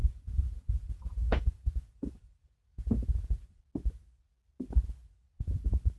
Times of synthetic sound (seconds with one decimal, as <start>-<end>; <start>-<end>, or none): 0.0-3.6; 5.0-5.6